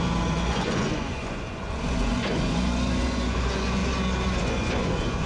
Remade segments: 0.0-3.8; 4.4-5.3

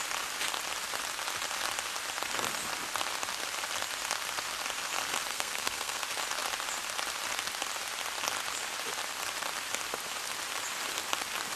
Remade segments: 5.3-6.0

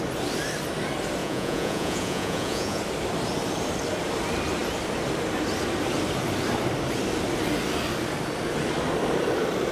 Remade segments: 1.2-2.8

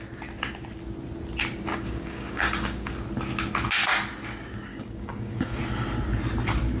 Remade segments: 1.7-2.9; 4.7-5.6